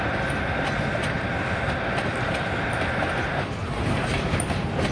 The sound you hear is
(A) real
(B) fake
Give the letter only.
A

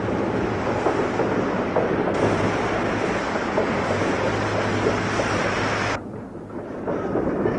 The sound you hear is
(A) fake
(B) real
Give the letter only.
B